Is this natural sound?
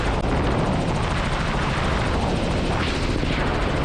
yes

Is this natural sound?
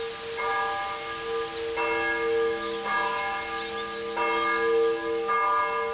yes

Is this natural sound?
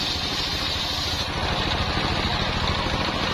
yes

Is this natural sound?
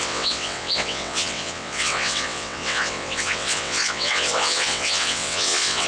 no